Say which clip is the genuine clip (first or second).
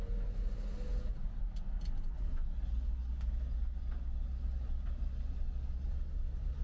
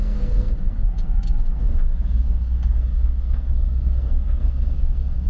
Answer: first